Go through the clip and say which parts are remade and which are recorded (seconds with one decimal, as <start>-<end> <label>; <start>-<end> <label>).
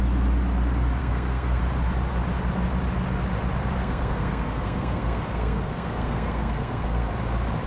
0.0-1.0 recorded; 1.0-1.6 remade; 1.6-3.8 recorded; 3.8-7.1 remade; 7.1-7.7 recorded